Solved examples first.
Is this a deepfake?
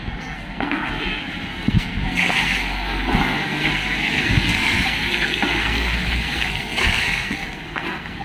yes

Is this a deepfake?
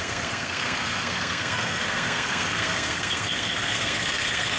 yes